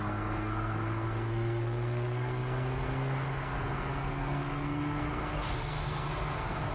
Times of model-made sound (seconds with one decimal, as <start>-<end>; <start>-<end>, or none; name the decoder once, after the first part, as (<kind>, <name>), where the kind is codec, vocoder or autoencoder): 0.0-6.7 (codec, SNAC)